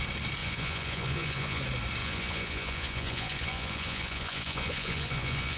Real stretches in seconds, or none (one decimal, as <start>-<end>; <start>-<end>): 0.0-0.4; 1.6-2.0